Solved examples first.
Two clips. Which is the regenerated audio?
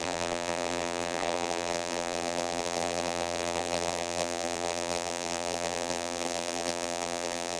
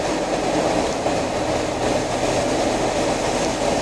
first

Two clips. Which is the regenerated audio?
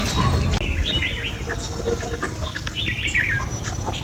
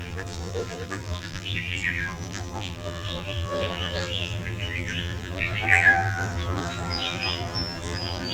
second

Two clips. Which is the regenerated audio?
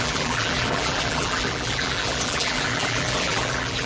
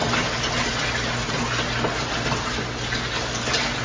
first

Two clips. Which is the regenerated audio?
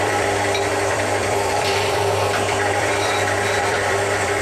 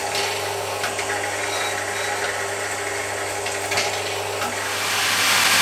first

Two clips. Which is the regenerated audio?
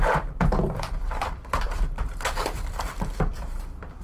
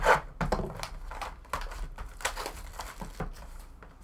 first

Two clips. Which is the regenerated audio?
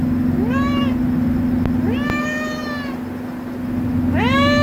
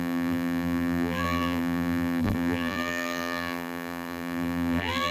second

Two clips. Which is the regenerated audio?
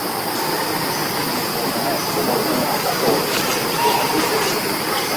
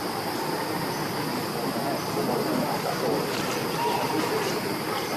first